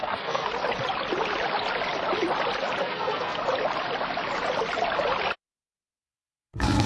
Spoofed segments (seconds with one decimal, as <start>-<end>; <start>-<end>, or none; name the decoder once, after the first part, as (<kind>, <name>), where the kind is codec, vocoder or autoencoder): 0.0-0.5 (codec, SNAC); 2.8-3.4; 6.0-6.9

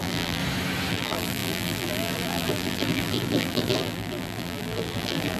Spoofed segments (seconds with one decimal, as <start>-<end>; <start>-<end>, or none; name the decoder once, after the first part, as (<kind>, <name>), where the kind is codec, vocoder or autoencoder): 0.0-0.4 (vocoder, BigVGAN v2); 0.9-5.4